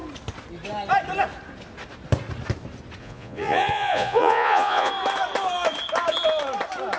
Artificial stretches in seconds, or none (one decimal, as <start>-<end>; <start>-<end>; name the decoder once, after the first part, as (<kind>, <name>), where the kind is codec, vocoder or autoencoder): 3.0-4.9 (vocoder, Vocos)